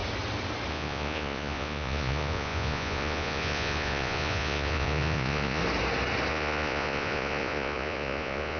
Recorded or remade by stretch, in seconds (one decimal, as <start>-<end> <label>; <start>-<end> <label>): 0.0-0.7 recorded; 0.7-5.6 remade; 5.6-6.3 recorded; 6.3-8.6 remade